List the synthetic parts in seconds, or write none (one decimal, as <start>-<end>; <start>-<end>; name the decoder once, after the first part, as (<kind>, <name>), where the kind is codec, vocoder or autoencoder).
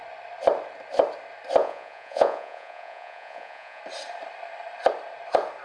1.6-3.8 (vocoder, Vocos)